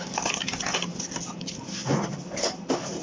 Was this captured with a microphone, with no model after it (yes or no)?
yes